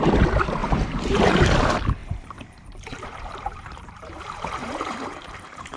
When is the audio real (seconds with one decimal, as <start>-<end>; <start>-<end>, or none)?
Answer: 0.0-0.6; 1.2-2.0